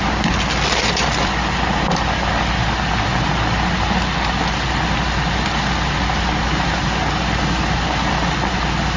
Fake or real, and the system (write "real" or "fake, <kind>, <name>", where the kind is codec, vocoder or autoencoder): real